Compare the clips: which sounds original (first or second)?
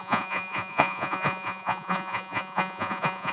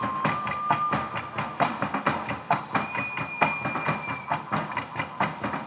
second